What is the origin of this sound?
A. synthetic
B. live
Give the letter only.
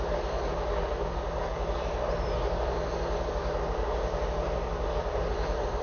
B